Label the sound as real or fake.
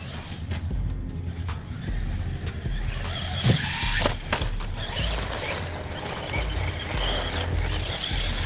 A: real